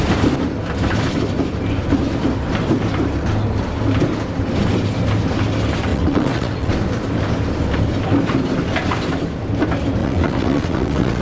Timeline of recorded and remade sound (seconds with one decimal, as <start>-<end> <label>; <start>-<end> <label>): 0.0-5.9 recorded; 5.9-6.7 remade; 6.7-10.0 recorded; 10.0-11.2 remade

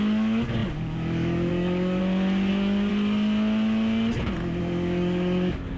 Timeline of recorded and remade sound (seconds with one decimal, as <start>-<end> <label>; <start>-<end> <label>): 0.0-2.0 remade; 2.0-2.5 recorded; 2.5-2.9 remade; 2.9-4.6 recorded; 4.6-5.8 remade